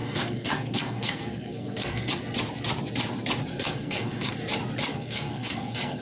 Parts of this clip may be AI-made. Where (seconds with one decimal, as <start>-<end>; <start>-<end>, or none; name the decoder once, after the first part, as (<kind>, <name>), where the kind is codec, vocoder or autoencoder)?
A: 0.0-2.1 (codec, SNAC); 3.5-4.3; 4.9-6.0